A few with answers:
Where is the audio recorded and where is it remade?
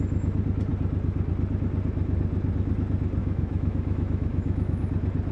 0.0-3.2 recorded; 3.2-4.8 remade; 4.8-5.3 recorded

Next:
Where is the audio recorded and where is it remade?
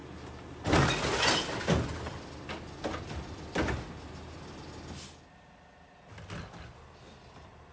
0.0-7.7 recorded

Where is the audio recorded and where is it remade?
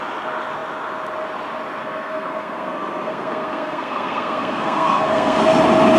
0.0-1.8 recorded; 1.8-5.4 remade; 5.4-6.0 recorded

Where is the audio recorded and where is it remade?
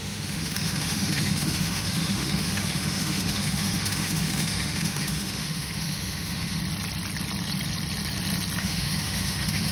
0.0-6.6 remade; 6.6-8.6 recorded; 8.6-9.7 remade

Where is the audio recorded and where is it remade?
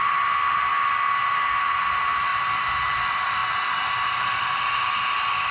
0.0-0.7 remade; 0.7-1.8 recorded; 1.8-3.4 remade; 3.4-4.2 recorded; 4.2-5.5 remade